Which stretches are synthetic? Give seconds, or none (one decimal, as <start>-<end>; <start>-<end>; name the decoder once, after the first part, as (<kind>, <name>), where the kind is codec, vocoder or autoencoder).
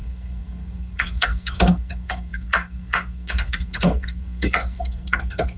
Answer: 0.0-5.6 (codec, SNAC)